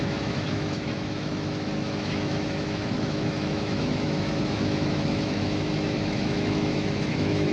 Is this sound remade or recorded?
remade